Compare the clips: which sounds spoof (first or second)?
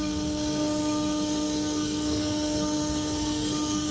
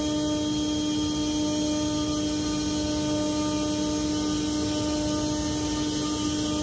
first